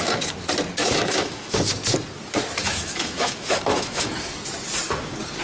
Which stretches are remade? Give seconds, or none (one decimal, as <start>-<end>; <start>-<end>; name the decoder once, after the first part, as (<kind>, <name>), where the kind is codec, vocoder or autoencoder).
0.8-1.6 (autoencoder, DAC-VAE); 2.6-4.1